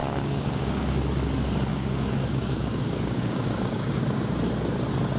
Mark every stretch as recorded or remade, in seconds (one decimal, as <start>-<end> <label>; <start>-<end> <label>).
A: 0.0-1.0 remade; 1.0-1.7 recorded; 1.7-4.0 remade; 4.0-5.2 recorded